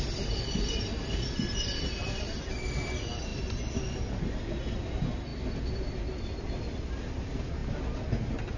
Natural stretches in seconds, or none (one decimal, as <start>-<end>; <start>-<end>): 0.0-8.6